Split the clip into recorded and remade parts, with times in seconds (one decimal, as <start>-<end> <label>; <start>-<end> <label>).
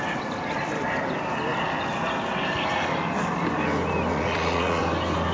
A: 0.0-4.1 recorded; 4.1-4.8 remade; 4.8-5.3 recorded